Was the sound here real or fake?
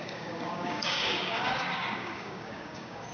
fake